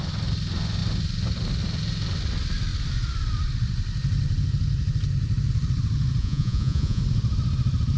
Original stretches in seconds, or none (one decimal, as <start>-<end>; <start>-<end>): 0.0-6.2; 7.0-8.0